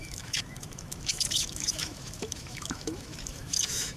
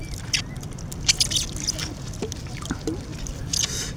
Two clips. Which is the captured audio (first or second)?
second